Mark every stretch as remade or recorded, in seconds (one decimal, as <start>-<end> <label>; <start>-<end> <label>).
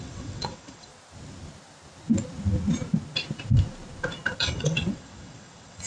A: 0.0-0.9 remade; 0.9-4.4 recorded; 4.4-5.9 remade